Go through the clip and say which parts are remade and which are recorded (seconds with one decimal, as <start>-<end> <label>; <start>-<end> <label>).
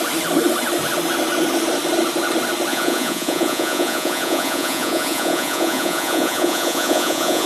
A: 0.0-2.7 recorded; 2.7-7.5 remade